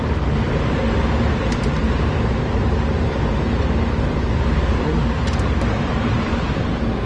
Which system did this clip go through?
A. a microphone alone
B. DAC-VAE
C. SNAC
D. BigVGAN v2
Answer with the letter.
D